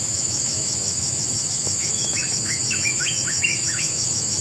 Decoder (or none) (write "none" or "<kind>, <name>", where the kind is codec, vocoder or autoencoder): autoencoder, DAC-VAE